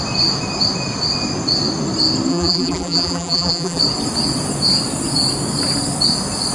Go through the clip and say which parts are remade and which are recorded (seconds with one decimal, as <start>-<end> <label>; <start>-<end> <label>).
0.0-2.3 recorded; 2.3-3.8 remade; 3.8-6.5 recorded